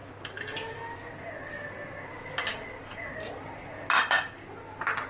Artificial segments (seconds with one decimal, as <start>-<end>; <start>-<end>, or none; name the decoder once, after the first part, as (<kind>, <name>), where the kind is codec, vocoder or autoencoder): none